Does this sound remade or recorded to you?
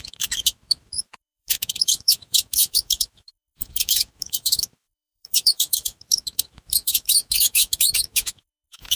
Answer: remade